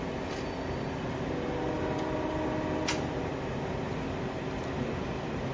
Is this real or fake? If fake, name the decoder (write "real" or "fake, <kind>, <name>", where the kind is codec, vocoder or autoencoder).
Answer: real